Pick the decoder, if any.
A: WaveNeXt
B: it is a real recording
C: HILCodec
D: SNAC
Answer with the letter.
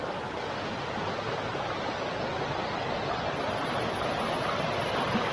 B